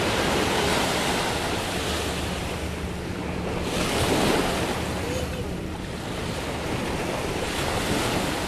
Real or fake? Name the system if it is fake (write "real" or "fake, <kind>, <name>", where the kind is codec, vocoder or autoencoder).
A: real